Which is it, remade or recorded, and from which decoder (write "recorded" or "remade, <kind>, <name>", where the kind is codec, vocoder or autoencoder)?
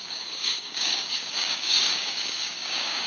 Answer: remade, codec, DAC